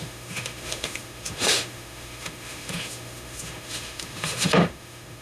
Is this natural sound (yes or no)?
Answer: no